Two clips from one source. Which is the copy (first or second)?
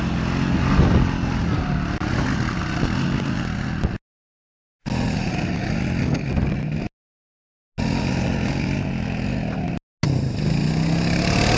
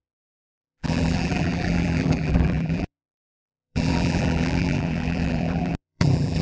second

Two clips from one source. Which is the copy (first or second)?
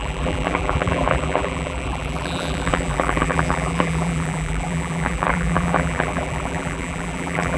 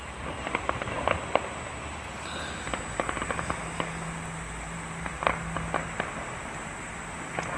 first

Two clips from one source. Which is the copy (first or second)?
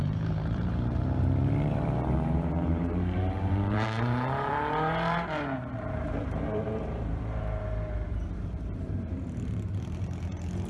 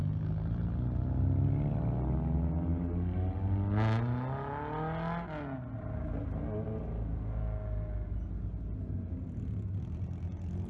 first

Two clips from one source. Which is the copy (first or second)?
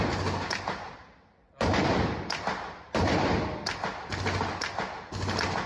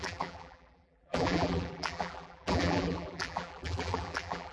second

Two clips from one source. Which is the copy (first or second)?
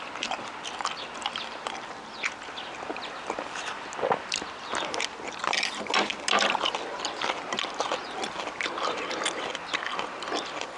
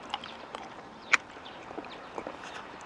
second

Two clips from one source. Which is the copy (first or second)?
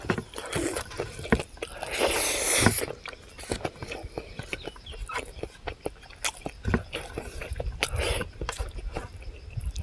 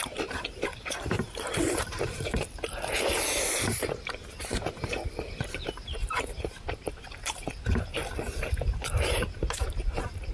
second